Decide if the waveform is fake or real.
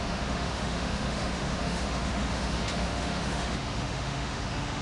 fake